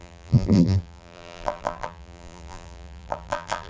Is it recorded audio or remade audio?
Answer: remade